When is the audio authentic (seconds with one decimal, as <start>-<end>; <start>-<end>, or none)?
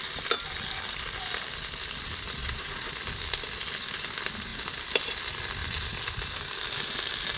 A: 0.0-2.4; 2.9-7.4